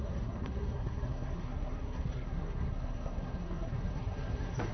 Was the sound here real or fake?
fake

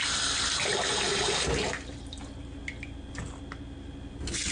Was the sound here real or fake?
real